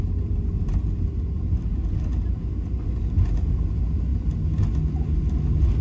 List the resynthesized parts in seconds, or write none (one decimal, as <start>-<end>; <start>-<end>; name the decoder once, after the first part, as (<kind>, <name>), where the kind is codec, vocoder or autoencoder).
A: none